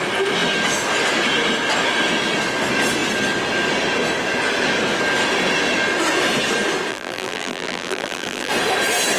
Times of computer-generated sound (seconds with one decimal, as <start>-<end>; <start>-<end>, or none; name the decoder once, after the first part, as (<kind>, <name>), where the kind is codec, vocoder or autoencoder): 6.9-8.5 (vocoder, BigVGAN v2)